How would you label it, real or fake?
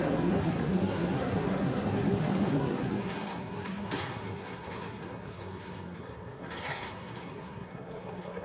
fake